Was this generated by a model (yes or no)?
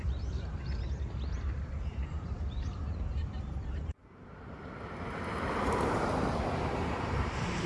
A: yes